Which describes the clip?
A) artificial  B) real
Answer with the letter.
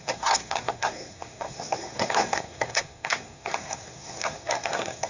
A